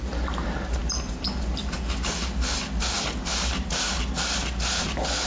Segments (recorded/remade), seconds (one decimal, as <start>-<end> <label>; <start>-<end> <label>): 0.0-5.3 recorded